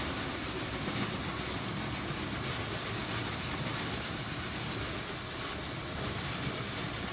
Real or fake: real